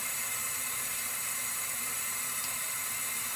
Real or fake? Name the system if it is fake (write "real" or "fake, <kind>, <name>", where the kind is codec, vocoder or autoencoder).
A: fake, vocoder, BigVGAN v2